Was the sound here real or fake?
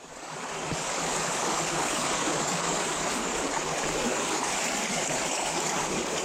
fake